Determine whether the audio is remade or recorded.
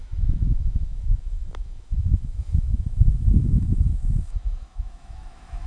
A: remade